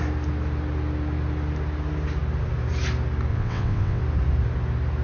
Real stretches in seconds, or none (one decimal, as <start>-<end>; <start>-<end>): 0.0-3.3; 4.0-5.0